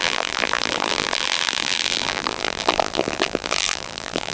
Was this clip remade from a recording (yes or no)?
yes